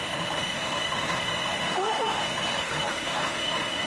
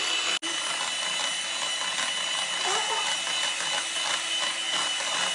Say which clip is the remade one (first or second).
first